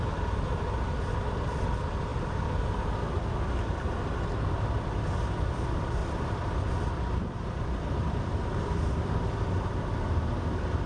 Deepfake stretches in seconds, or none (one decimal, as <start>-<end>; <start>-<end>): 6.0-6.6